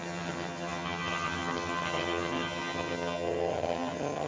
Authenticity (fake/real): fake